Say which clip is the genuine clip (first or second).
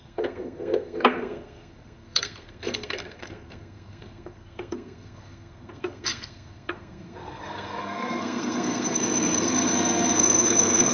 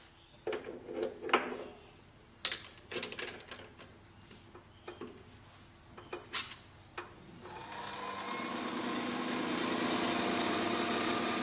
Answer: second